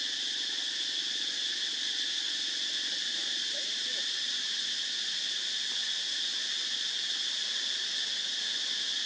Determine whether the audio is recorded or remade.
recorded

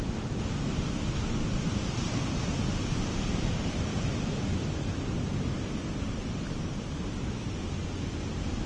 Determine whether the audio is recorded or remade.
recorded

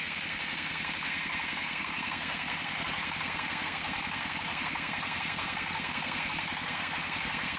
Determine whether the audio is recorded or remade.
remade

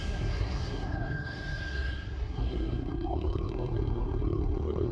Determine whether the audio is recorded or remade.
remade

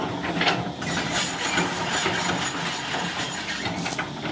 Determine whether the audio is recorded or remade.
recorded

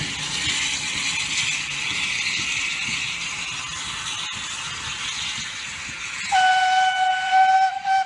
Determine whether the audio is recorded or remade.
recorded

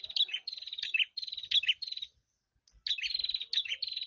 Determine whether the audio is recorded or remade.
recorded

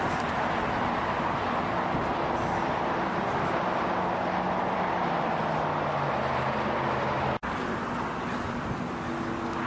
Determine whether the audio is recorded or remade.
recorded